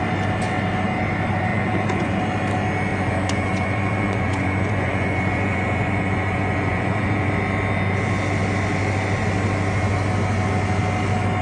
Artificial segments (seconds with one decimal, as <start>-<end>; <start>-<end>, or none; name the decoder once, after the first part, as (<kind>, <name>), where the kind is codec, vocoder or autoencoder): 1.5-2.2 (vocoder, Vocos); 2.9-7.3

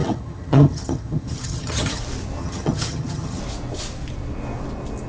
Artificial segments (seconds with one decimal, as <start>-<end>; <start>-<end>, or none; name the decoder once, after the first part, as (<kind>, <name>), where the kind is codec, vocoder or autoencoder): 0.0-2.0 (vocoder, HiFi-GAN); 2.4-3.4

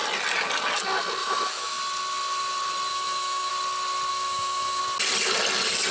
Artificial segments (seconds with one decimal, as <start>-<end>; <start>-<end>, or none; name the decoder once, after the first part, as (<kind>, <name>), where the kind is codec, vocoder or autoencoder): 1.2-1.8 (autoencoder, DAC-VAE); 2.9-3.5; 4.1-4.8

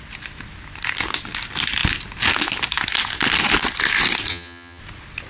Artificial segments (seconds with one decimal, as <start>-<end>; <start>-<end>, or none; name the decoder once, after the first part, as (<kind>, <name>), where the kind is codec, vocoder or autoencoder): 4.3-4.8 (vocoder, HiFi-GAN)

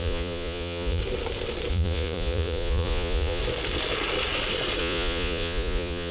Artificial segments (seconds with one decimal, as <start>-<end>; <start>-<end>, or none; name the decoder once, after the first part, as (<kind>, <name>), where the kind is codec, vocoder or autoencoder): 0.0-1.0 (vocoder, Vocos); 1.7-3.4; 4.8-6.1

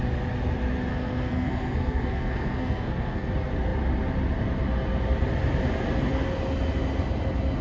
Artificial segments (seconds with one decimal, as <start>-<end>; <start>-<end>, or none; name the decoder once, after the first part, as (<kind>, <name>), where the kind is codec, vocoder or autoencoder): 0.9-3.3 (codec, SNAC)